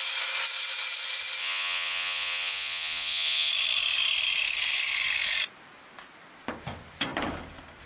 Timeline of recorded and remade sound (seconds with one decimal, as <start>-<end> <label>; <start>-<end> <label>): 0.0-1.4 recorded; 1.4-3.5 remade; 3.5-7.9 recorded

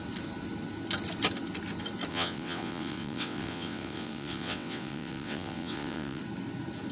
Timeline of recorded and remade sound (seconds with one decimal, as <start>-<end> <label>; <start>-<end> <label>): 0.0-2.1 recorded; 2.1-6.2 remade; 6.2-6.9 recorded

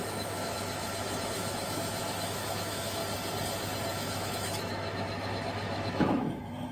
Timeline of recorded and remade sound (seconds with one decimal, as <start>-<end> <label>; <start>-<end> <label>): 0.0-3.0 remade; 3.0-3.9 recorded; 3.9-6.7 remade

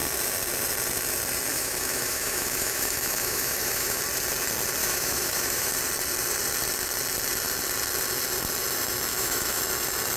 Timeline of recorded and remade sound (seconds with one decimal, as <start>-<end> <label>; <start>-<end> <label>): 0.0-1.5 recorded; 1.5-4.0 remade; 4.0-4.8 recorded; 4.8-5.7 remade; 5.7-9.1 recorded; 9.1-9.6 remade; 9.6-10.2 recorded

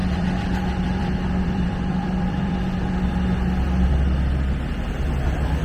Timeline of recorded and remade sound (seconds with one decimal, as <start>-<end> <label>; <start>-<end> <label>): 0.0-2.7 remade; 2.7-5.6 recorded

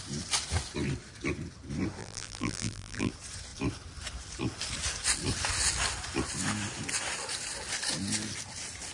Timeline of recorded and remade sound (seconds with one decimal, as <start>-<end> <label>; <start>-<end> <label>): 0.0-2.0 recorded; 2.0-3.1 remade; 3.1-8.9 recorded

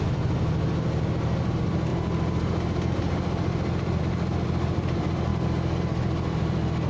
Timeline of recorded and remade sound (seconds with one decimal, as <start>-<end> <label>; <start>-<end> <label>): 0.0-6.9 recorded